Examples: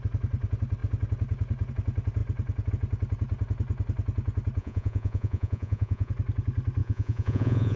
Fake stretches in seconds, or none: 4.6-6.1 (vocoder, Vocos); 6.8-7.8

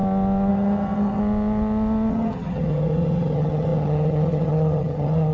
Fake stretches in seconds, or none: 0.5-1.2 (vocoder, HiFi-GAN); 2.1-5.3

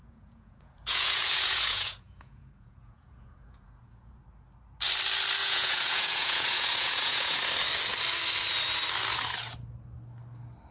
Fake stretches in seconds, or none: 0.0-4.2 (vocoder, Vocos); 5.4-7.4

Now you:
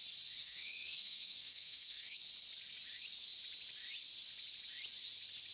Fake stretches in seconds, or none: 0.4-2.2 (codec, SNAC)

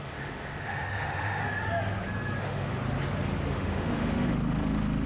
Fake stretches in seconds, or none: 0.0-1.4 (autoencoder, DAC-VAE); 2.4-2.8; 3.5-5.1

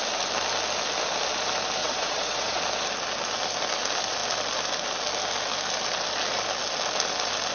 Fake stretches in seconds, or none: 1.8-2.6 (vocoder, WaveNeXt)

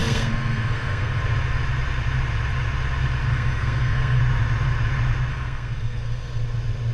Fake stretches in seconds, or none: 0.0-1.2 (codec, SNAC); 3.3-4.2; 5.3-6.4

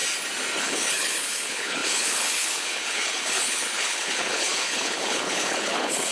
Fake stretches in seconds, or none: 0.6-6.1 (codec, HILCodec)